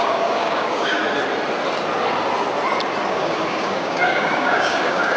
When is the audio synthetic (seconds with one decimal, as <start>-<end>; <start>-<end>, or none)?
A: 0.0-1.0; 3.1-5.2